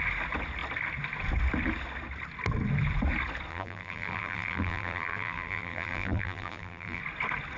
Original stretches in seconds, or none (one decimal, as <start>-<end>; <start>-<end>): 0.0-3.5; 7.0-7.6